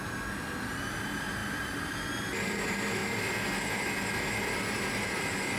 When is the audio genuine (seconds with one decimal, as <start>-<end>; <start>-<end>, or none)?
0.0-1.4; 1.9-5.6